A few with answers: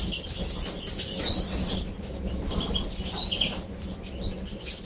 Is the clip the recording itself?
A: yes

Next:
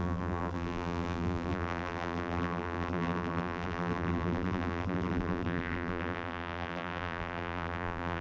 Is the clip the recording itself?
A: no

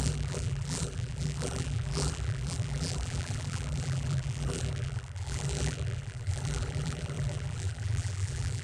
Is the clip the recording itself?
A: no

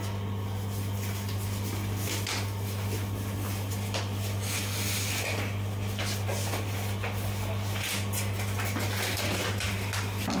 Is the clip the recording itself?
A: yes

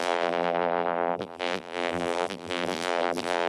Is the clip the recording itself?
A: no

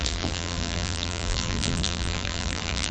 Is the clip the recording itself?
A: no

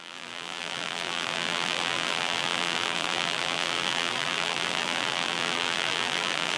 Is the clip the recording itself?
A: no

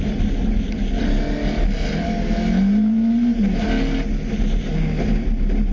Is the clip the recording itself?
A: yes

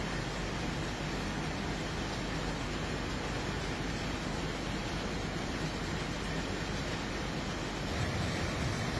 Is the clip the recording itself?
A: yes